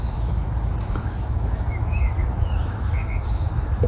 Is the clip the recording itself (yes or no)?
no